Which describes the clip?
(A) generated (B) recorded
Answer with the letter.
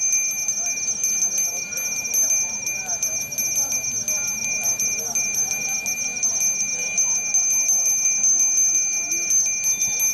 B